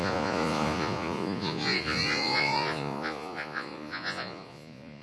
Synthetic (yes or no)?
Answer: yes